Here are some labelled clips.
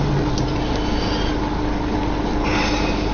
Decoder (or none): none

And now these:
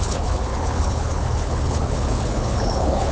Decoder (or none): codec, HILCodec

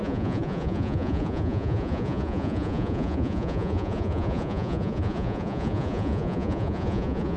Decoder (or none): vocoder, Vocos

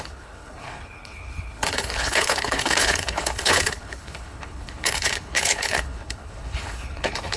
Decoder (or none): codec, HILCodec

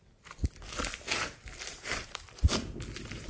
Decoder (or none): none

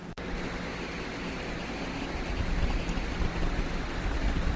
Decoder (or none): none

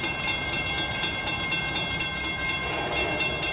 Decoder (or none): none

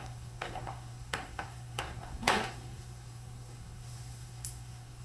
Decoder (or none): codec, SNAC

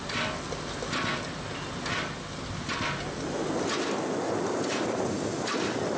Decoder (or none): none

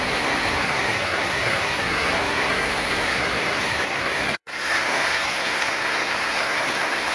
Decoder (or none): codec, SNAC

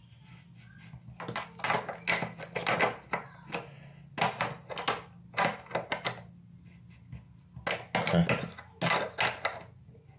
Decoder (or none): none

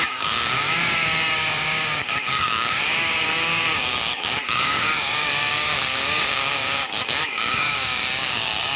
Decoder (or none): codec, DAC